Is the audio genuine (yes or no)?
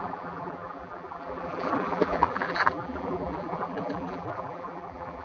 no